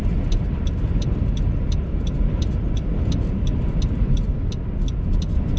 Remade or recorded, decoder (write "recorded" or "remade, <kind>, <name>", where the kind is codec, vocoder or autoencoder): recorded